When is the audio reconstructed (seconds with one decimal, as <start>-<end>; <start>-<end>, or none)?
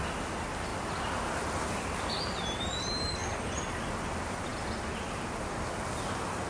none